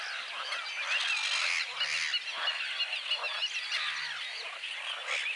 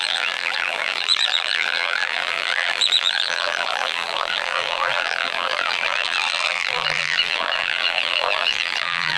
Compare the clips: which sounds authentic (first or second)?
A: first